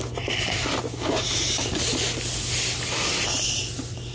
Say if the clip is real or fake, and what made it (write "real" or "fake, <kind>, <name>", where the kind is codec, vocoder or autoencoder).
real